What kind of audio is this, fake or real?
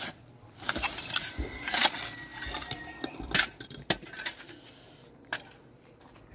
real